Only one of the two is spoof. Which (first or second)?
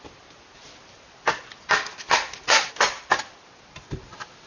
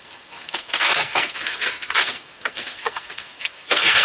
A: second